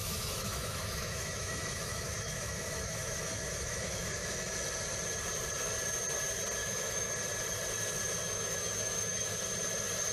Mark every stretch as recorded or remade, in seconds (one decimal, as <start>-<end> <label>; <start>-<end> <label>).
0.0-4.7 remade; 4.7-6.6 recorded; 6.6-7.1 remade; 7.1-8.2 recorded; 8.2-9.4 remade; 9.4-10.1 recorded